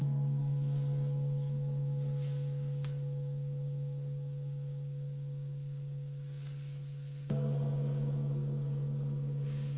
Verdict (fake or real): fake